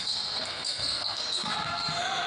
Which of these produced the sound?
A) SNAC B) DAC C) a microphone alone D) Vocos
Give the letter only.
A